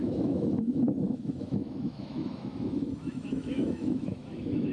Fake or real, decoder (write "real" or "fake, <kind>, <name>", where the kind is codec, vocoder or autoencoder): fake, autoencoder, DAC-VAE